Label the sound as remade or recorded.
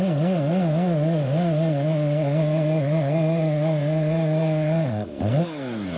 remade